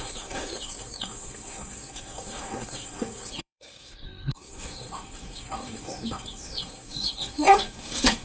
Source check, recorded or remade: remade